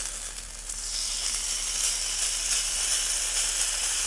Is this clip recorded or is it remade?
recorded